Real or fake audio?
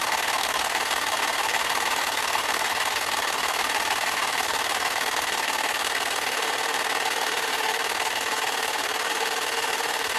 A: fake